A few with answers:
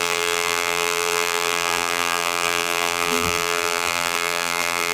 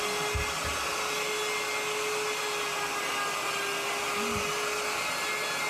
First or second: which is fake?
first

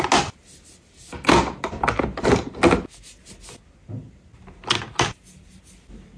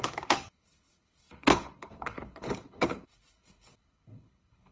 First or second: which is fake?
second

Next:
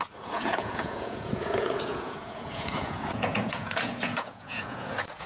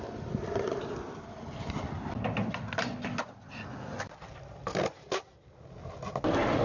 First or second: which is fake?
first